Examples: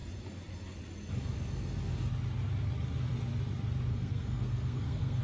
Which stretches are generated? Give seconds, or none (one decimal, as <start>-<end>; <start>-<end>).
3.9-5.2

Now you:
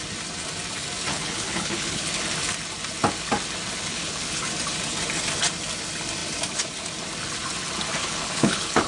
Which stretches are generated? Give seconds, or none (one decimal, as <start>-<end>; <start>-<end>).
1.1-2.1; 3.9-4.4; 8.0-8.9

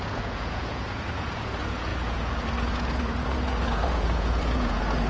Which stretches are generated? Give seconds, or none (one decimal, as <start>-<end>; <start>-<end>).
0.0-5.1

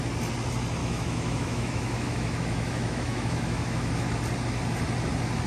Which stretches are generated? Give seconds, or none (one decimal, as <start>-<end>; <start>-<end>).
0.8-4.1

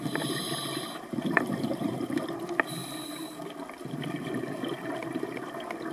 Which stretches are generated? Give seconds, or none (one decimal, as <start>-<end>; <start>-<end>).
0.6-2.2

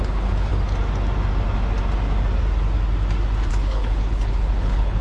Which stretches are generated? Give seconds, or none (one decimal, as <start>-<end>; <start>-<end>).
0.0-0.5; 3.5-5.0

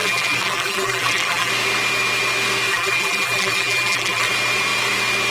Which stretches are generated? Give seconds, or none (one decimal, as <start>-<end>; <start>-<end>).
0.0-1.5; 2.7-4.3